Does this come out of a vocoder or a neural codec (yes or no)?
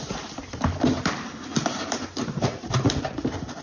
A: yes